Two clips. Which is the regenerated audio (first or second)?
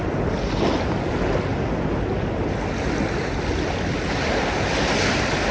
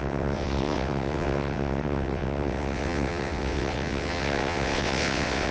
second